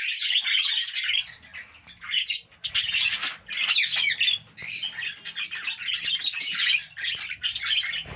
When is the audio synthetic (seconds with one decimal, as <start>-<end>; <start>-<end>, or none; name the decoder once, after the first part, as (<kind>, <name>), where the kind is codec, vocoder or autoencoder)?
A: none